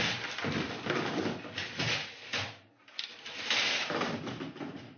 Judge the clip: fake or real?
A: real